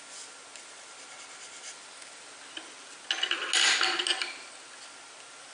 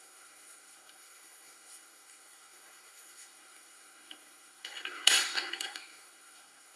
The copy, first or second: second